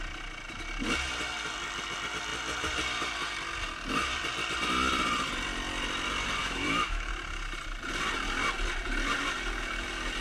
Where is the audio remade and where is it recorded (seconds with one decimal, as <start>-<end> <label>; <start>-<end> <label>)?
0.0-6.4 recorded; 6.4-7.1 remade; 7.1-10.2 recorded